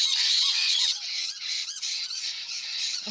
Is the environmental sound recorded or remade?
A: remade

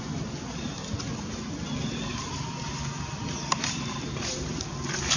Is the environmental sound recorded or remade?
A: recorded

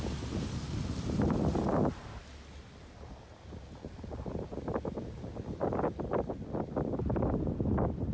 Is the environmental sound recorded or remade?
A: recorded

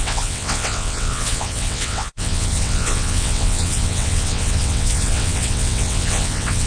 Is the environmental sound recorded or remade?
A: remade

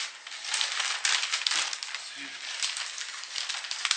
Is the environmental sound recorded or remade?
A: recorded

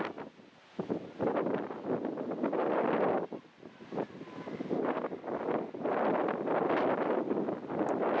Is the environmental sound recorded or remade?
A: recorded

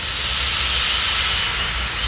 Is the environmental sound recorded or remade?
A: recorded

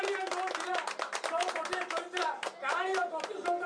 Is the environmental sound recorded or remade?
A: recorded